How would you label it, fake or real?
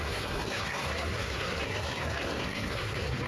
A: fake